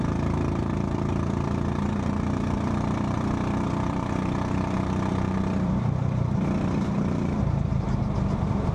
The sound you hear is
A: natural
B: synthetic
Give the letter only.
B